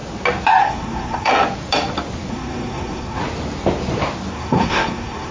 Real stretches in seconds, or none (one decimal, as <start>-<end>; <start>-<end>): 0.0-0.6; 1.3-2.3; 3.2-4.3